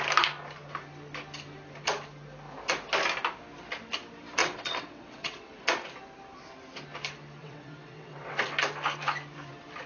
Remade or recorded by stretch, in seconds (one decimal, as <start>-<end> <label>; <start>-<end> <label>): 0.0-4.4 recorded; 4.4-5.5 remade; 5.5-7.4 recorded; 7.4-8.4 remade; 8.4-9.9 recorded

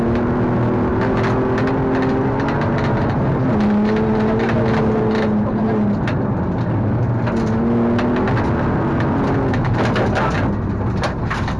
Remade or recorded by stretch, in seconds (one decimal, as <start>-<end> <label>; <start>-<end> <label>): 0.0-11.6 recorded